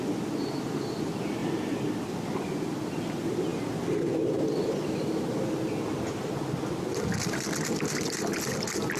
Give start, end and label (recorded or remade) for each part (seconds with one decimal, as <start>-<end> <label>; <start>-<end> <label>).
0.0-9.0 recorded